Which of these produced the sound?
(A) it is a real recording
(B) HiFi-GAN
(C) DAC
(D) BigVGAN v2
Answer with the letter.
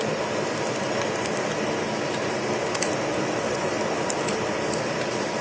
D